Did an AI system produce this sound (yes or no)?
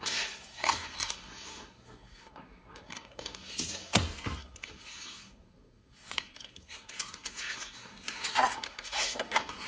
yes